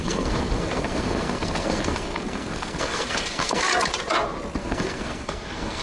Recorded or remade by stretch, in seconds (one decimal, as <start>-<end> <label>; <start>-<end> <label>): 0.0-3.7 remade; 3.7-4.6 recorded; 4.6-5.8 remade